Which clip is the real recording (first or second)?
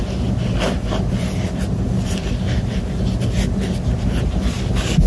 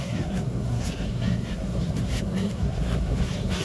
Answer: first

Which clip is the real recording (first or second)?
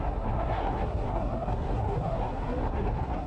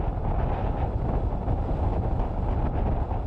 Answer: second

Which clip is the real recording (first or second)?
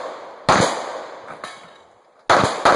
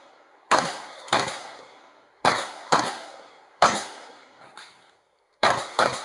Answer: first